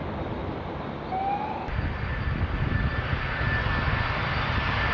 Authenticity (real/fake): real